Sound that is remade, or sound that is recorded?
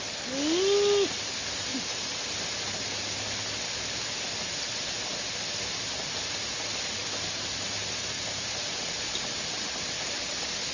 recorded